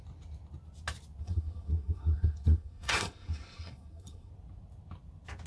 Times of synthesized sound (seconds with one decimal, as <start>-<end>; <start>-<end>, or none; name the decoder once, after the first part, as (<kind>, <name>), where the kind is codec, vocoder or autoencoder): 1.2-4.3 (codec, SNAC)